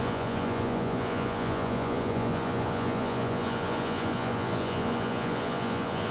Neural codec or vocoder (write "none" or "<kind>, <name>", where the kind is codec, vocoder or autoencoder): vocoder, Vocos